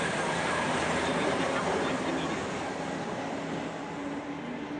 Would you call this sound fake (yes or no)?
no